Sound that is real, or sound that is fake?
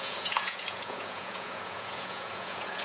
fake